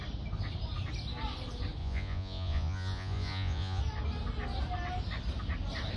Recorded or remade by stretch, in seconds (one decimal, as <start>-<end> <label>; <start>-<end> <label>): 0.0-1.8 recorded; 1.8-3.8 remade; 3.8-6.0 recorded